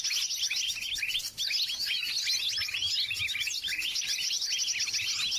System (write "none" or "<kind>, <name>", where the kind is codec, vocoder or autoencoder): none